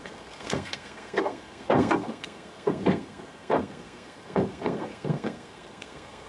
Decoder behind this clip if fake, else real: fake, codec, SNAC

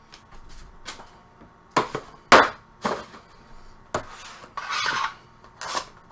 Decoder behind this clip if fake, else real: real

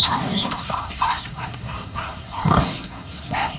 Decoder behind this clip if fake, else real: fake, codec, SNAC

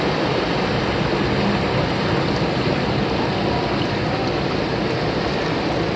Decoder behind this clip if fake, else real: real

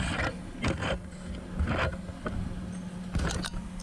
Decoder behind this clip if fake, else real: real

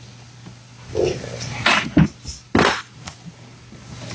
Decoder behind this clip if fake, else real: real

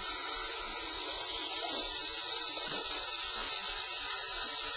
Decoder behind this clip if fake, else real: real